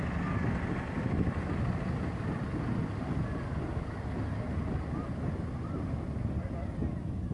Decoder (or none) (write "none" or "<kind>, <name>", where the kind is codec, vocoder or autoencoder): none